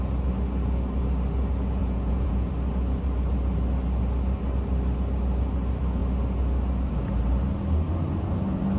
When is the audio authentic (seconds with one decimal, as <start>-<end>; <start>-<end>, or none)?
0.0-1.8; 2.5-8.8

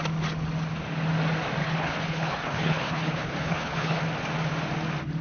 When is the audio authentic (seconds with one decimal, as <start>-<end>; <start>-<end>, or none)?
0.0-1.6; 4.0-5.2